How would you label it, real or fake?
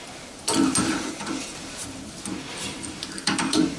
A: fake